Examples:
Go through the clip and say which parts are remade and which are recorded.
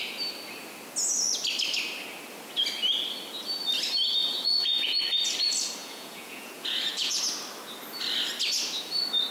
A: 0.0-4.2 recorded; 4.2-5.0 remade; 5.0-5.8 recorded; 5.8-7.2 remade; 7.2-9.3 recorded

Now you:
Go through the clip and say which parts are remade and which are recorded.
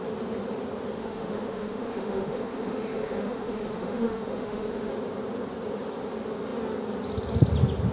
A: 0.0-1.0 recorded; 1.0-4.9 remade; 4.9-7.9 recorded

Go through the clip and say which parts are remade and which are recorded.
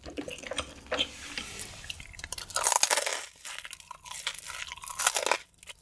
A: 0.0-5.8 recorded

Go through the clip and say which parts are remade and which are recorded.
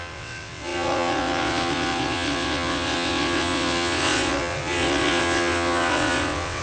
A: 0.0-6.6 remade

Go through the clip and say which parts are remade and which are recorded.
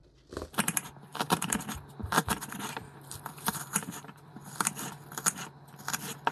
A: 0.0-1.1 recorded; 1.1-1.6 remade; 1.6-2.0 recorded; 2.0-4.7 remade; 4.7-6.3 recorded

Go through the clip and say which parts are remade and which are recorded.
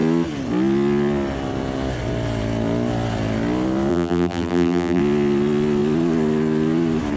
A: 0.0-3.9 recorded; 3.9-5.0 remade; 5.0-7.2 recorded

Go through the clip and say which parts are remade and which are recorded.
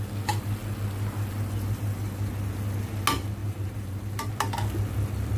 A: 0.0-3.4 recorded; 3.4-4.3 remade; 4.3-5.4 recorded